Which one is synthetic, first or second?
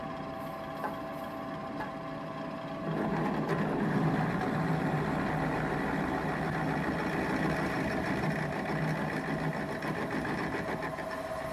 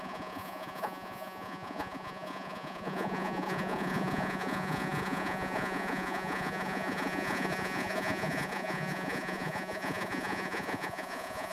second